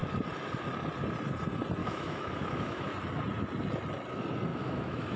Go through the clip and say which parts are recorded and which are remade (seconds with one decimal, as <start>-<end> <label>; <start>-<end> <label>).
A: 0.0-1.8 recorded; 1.8-2.9 remade; 2.9-4.5 recorded; 4.5-5.2 remade